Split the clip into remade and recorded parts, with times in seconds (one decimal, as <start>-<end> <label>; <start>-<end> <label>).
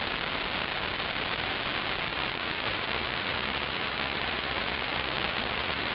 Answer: 0.0-2.1 recorded; 2.1-5.9 remade